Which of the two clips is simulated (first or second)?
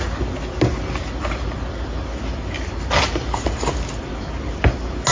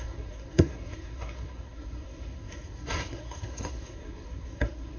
second